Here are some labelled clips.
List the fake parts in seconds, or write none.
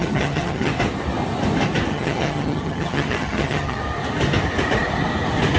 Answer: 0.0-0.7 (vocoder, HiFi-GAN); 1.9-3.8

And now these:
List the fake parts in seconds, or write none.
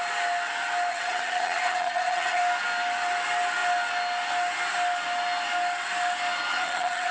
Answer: 0.9-2.4 (vocoder, HiFi-GAN); 6.5-7.1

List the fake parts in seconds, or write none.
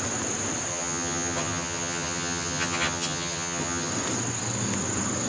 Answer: 0.7-3.9 (vocoder, HiFi-GAN)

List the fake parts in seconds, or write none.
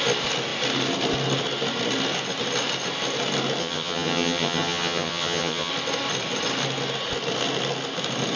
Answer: 3.6-5.7 (vocoder, HiFi-GAN)